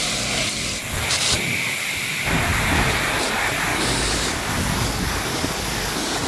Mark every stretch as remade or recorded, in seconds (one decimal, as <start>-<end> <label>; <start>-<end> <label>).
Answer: 0.0-3.7 recorded; 3.7-6.3 remade